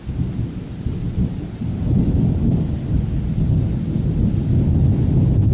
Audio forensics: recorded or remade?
recorded